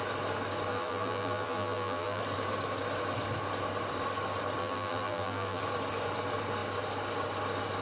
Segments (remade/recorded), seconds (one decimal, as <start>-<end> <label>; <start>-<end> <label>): 0.0-0.7 recorded; 0.7-2.2 remade; 2.2-4.6 recorded; 4.6-5.6 remade; 5.6-7.8 recorded